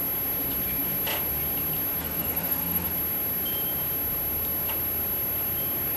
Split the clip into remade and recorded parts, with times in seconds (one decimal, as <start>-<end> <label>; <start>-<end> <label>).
0.0-2.0 recorded; 2.0-2.9 remade; 2.9-6.0 recorded